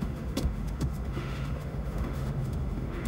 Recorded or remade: remade